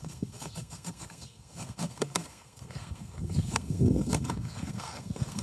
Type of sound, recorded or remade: remade